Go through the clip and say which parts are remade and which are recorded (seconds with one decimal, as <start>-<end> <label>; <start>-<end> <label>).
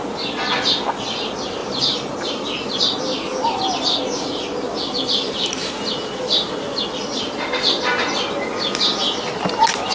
0.0-1.6 recorded; 1.6-2.1 remade; 2.1-3.3 recorded; 3.3-4.0 remade; 4.0-9.9 recorded